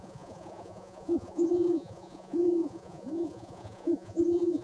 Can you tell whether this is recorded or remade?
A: remade